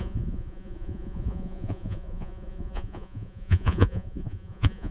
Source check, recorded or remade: remade